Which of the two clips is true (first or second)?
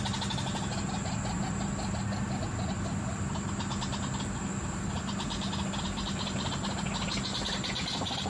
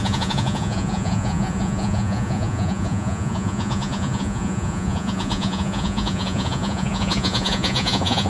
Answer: first